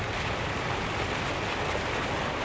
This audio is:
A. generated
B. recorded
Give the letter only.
B